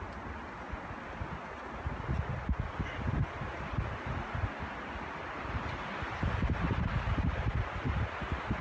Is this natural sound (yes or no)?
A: yes